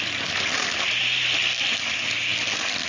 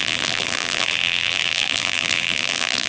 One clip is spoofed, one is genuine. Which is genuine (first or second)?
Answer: first